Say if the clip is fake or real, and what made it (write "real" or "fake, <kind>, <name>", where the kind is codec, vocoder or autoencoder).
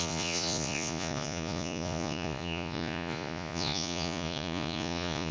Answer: fake, vocoder, Vocos